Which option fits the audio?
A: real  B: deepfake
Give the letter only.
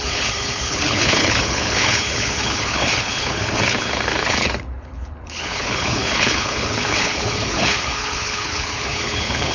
B